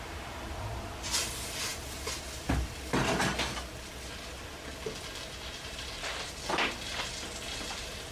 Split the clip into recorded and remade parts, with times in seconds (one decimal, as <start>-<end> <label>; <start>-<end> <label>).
0.0-8.1 recorded